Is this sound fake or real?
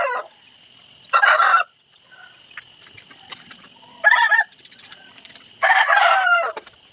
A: fake